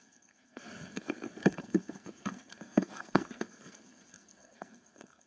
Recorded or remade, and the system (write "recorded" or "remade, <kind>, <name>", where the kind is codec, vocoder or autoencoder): remade, codec, SNAC